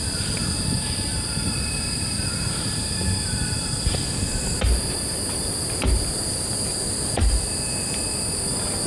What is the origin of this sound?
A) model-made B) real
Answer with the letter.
B